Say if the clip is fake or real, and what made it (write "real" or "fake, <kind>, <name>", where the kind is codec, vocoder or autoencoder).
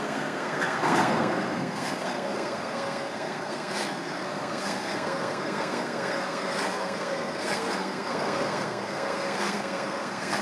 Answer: fake, codec, SNAC